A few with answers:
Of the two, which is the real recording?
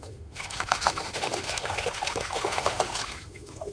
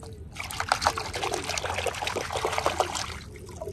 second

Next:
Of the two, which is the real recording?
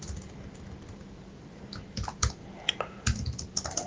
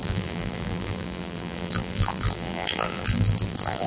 first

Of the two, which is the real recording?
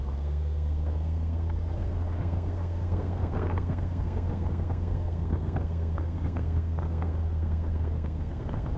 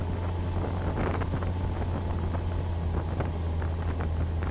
second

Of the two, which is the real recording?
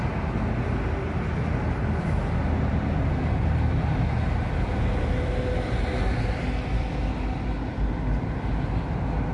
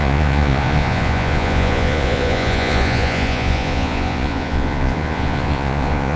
first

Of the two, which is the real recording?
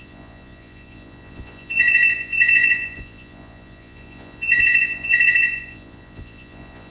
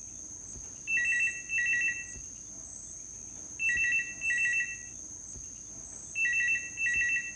second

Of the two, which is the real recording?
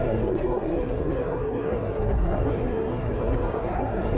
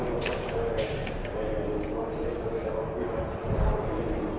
second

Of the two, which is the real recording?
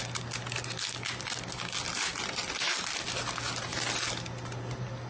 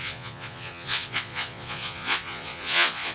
first